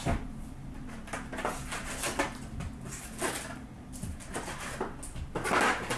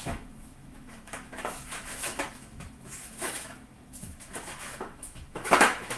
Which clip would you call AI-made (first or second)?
second